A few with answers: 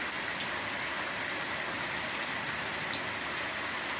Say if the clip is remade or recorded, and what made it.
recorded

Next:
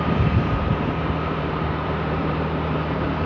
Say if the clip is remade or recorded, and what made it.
remade, vocoder, BigVGAN v2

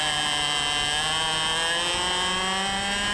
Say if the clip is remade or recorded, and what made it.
recorded